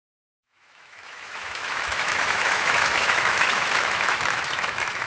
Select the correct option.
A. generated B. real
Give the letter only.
A